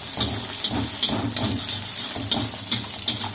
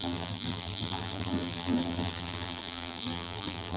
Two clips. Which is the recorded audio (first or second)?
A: first